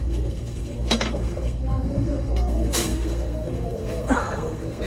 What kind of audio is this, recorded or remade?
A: remade